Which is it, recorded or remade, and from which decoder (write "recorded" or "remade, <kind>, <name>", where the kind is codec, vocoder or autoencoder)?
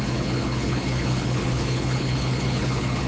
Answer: remade, codec, HILCodec